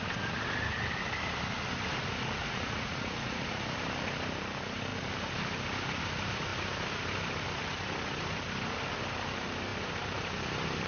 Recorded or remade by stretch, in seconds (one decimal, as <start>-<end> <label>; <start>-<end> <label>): 0.0-2.4 recorded; 2.4-3.6 remade; 3.6-10.9 recorded